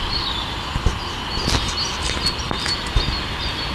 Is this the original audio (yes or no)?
yes